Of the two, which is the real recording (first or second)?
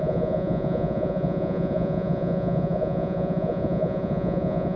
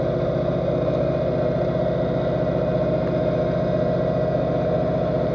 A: second